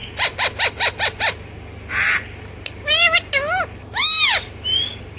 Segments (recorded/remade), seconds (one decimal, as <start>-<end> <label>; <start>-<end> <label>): 0.0-5.2 recorded